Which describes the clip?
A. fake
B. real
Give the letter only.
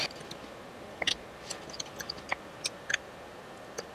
B